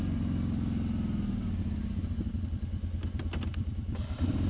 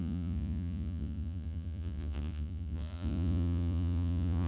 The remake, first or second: second